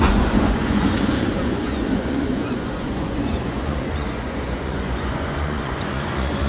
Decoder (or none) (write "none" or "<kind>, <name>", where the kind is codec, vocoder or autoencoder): vocoder, Vocos